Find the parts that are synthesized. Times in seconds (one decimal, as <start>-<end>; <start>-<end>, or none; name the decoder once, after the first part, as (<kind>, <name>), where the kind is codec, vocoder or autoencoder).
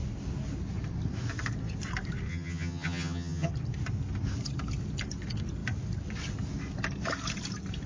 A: 2.3-3.5 (vocoder, HiFi-GAN)